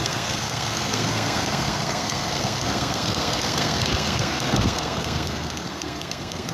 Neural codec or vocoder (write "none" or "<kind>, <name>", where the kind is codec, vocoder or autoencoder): codec, SNAC